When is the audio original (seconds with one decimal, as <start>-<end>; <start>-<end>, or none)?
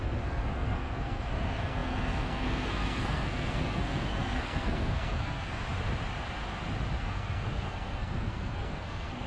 5.6-7.0